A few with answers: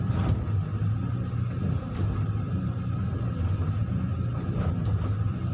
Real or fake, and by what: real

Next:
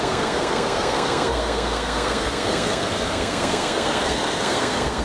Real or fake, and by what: fake, codec, SNAC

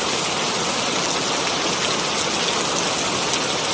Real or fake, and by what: real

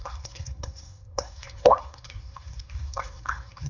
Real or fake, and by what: fake, codec, SNAC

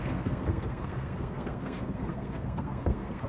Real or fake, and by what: fake, codec, SNAC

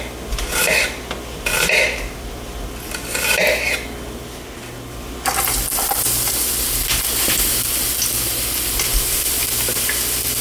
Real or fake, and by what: real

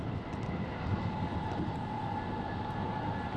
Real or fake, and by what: real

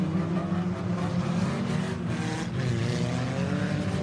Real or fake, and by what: real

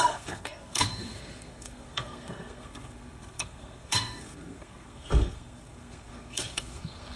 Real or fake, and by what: fake, codec, SNAC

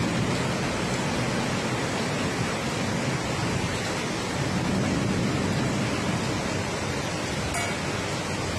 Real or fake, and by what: real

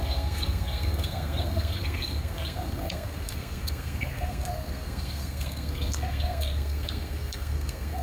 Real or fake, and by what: fake, codec, SNAC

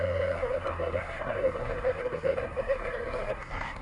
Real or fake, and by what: fake, codec, SNAC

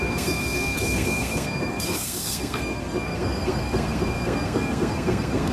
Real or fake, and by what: fake, codec, SNAC